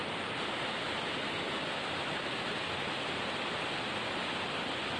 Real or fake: real